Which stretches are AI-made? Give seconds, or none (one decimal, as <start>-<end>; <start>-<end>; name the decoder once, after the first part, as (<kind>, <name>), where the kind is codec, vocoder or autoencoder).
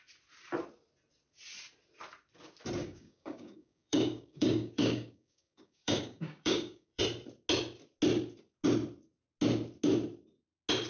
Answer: 2.8-7.0 (codec, DAC)